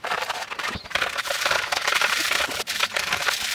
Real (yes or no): no